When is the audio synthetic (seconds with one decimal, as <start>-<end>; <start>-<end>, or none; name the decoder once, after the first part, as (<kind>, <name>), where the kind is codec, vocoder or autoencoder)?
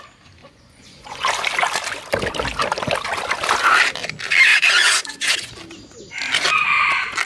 0.4-1.3 (vocoder, Vocos); 4.5-5.5